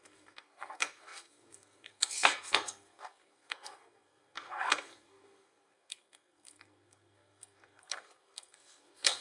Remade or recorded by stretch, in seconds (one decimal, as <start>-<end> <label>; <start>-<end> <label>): 0.0-9.2 remade